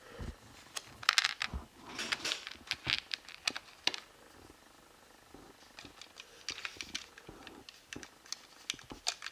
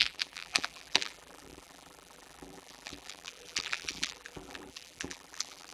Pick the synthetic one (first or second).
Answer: second